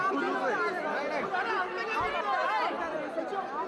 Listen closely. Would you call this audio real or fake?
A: real